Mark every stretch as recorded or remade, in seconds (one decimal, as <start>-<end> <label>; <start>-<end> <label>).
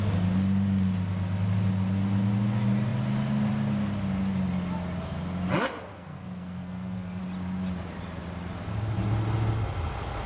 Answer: 0.0-5.9 recorded; 5.9-7.2 remade; 7.2-10.3 recorded